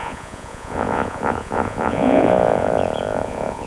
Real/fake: fake